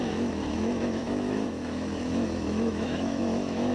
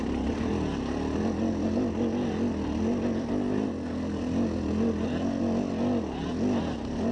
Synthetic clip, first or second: first